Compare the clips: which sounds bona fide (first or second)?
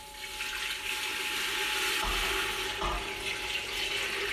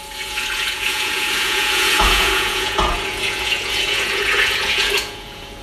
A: first